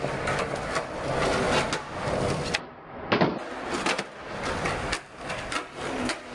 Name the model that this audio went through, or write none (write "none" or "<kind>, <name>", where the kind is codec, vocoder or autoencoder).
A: none